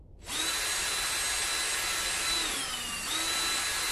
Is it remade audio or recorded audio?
recorded